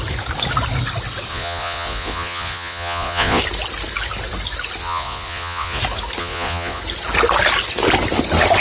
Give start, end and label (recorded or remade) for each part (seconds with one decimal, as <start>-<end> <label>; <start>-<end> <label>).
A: 0.0-1.3 recorded; 1.3-3.4 remade; 3.4-4.8 recorded; 4.8-5.8 remade; 5.8-6.2 recorded; 6.2-6.8 remade; 6.8-8.6 recorded